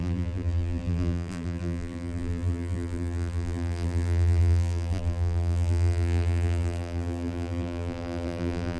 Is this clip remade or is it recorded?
remade